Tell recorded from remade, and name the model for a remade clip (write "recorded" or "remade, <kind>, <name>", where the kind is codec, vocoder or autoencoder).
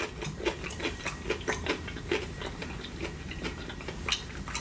recorded